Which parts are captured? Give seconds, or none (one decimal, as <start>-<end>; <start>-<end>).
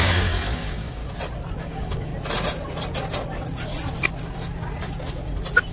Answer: 1.0-1.6; 2.1-5.7